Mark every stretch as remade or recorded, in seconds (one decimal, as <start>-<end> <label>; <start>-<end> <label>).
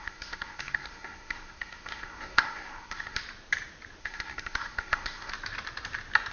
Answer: 0.0-3.2 remade; 3.2-4.0 recorded; 4.0-5.3 remade; 5.3-6.3 recorded